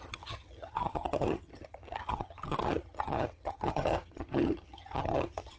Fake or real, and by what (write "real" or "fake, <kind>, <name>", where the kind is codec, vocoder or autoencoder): fake, vocoder, HiFi-GAN